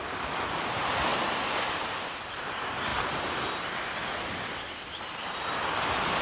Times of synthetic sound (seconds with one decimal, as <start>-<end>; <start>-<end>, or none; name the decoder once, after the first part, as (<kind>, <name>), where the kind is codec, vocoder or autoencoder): none